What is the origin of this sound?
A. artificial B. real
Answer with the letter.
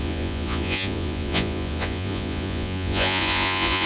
A